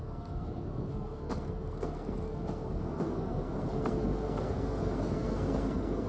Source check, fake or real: fake